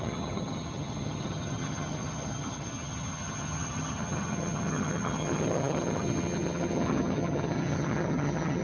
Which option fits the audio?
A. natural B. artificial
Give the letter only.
B